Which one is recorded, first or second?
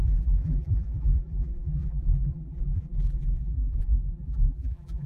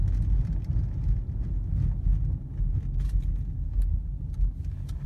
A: second